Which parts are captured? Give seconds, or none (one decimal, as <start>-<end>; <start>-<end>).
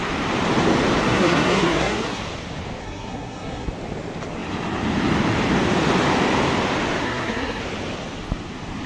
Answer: 0.0-1.0; 2.2-2.8; 3.7-7.0; 7.6-8.9